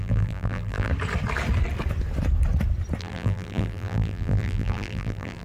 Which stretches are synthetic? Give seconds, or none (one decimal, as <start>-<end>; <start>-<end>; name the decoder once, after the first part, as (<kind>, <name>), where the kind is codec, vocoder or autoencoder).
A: 0.0-0.9 (vocoder, BigVGAN v2); 3.0-5.4